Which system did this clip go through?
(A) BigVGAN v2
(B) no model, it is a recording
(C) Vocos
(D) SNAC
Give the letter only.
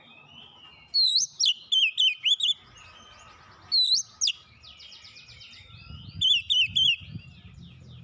B